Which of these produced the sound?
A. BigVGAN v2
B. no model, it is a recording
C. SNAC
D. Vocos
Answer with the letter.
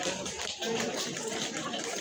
A